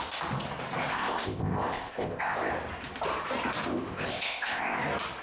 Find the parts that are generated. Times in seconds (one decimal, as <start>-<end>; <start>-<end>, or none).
0.9-2.5; 3.7-4.8